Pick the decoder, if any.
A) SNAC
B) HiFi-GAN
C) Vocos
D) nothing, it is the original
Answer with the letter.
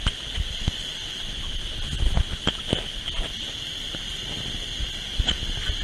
D